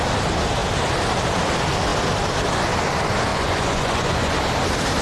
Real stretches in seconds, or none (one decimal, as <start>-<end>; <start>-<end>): 0.0-3.3; 4.3-5.0

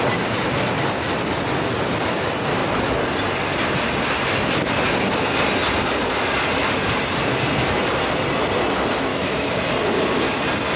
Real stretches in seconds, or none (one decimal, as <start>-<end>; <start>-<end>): 0.0-9.1; 9.6-10.8

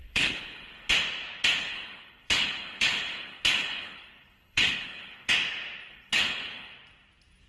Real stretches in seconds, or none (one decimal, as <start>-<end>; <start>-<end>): 0.9-1.6; 5.3-5.9; 6.7-7.5

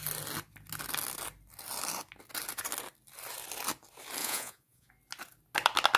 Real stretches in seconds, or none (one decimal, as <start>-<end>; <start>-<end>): 0.0-4.2; 4.9-6.0

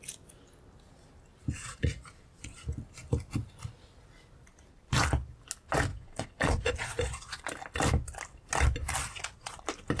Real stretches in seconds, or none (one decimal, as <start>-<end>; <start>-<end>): 0.0-1.6; 2.6-5.9; 7.4-9.0; 9.6-10.0

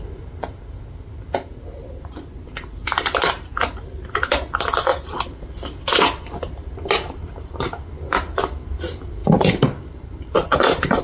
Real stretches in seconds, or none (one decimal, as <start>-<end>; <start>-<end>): 0.0-4.9; 7.6-9.2

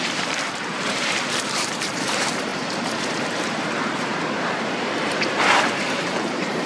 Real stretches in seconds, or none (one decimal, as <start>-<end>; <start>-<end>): none